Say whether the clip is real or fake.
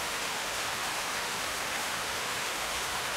fake